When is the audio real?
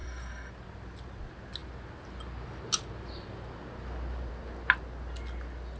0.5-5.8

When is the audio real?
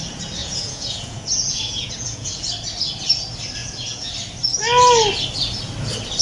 0.0-0.4; 2.4-3.6; 4.1-6.2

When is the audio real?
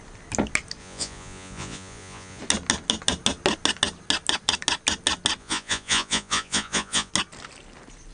0.0-0.8; 2.4-5.4; 7.1-8.1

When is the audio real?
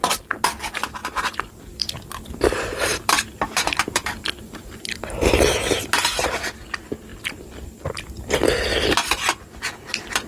0.0-1.0; 4.8-10.3